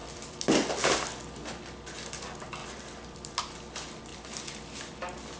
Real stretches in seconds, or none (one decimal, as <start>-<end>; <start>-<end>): 0.7-2.6; 3.4-4.1; 4.7-5.4